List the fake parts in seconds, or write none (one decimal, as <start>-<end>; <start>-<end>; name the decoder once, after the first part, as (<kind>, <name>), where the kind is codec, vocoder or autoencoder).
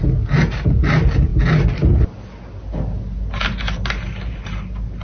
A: none